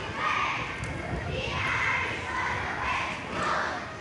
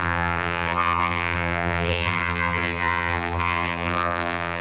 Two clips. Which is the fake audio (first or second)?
second